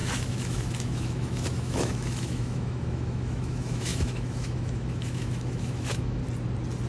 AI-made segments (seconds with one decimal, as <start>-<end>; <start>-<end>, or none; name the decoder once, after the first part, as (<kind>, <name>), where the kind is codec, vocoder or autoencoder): 0.0-6.2 (autoencoder, DAC-VAE)

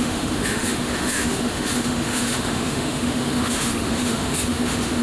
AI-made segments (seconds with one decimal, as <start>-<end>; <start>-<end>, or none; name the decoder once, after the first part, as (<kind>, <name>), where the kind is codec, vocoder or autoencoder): 0.0-5.0 (autoencoder, DAC-VAE)